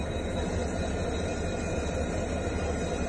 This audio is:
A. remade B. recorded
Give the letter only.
A